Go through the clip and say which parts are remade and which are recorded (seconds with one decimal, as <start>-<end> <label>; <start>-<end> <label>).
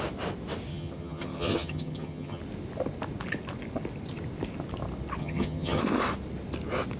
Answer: 0.0-0.7 recorded; 0.7-2.4 remade; 2.4-5.2 recorded; 5.2-5.8 remade; 5.8-7.0 recorded